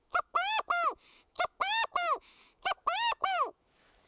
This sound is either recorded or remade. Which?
remade